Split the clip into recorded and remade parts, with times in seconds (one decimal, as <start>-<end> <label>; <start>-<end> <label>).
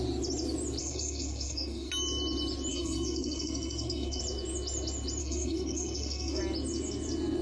0.0-0.8 recorded; 0.8-1.9 remade; 1.9-2.7 recorded; 2.7-4.2 remade; 4.2-5.2 recorded; 5.2-6.4 remade; 6.4-7.4 recorded